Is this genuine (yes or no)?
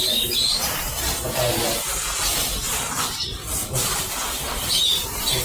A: no